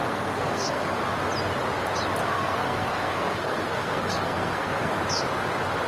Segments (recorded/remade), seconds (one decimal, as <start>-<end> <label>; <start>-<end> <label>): 0.0-1.0 remade; 1.0-2.2 recorded; 2.2-5.0 remade; 5.0-5.9 recorded